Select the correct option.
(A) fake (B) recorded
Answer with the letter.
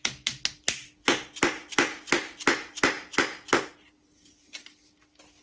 B